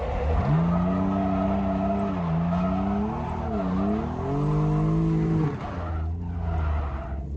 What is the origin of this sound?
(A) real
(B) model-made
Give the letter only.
A